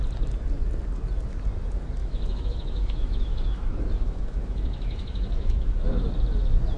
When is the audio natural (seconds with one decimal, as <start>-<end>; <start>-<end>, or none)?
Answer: 0.0-2.0; 6.1-6.8

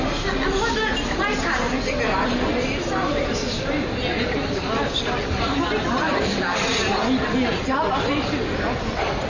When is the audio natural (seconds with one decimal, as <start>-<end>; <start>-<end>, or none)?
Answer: 0.0-9.3